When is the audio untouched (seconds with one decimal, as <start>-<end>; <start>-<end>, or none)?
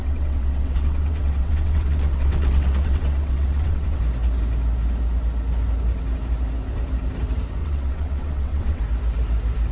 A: 4.0-7.6; 8.8-9.7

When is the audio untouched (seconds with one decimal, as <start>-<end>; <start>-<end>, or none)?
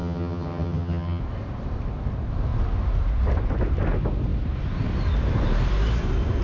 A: 1.2-6.4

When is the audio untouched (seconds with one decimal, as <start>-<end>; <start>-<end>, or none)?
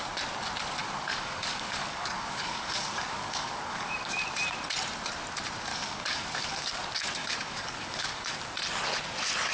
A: 0.0-0.8; 4.2-5.7; 6.8-7.2; 8.4-9.5